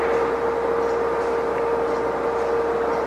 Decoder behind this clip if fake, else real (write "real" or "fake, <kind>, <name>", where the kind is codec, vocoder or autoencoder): real